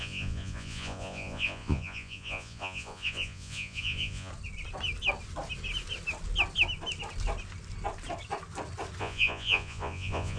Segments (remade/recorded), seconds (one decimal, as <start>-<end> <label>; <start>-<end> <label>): 0.0-4.3 remade; 4.3-9.0 recorded; 9.0-10.4 remade